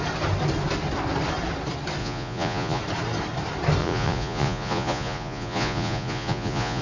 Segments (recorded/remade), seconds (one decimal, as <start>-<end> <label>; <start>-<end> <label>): 0.0-2.0 recorded; 2.0-2.8 remade; 2.8-3.8 recorded; 3.8-6.8 remade